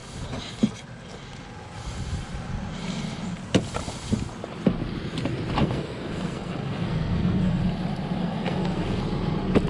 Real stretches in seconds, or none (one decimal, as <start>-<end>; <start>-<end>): 0.0-5.6; 7.6-8.2; 9.0-9.7